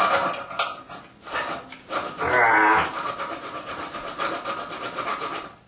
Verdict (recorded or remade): recorded